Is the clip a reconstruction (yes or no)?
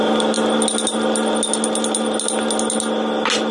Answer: no